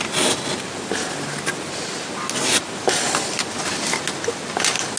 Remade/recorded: recorded